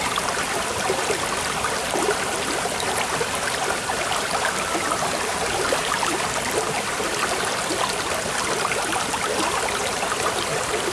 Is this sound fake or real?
fake